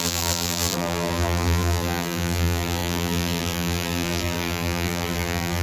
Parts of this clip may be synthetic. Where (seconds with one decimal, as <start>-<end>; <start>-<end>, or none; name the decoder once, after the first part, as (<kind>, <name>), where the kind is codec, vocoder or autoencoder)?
0.0-5.6 (vocoder, BigVGAN v2)